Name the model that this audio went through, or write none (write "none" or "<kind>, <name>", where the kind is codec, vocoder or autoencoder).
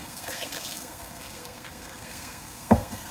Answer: codec, SNAC